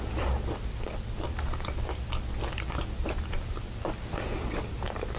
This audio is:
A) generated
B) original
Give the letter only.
B